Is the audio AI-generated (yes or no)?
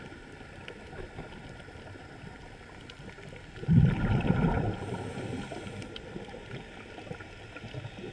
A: yes